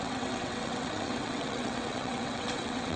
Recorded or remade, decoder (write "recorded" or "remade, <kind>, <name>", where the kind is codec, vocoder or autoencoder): remade, vocoder, WaveNeXt